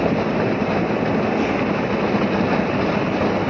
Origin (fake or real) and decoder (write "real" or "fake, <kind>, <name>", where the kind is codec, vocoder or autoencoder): real